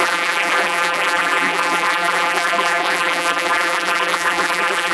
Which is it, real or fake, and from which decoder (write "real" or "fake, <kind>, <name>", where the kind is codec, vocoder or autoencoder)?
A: fake, vocoder, BigVGAN v2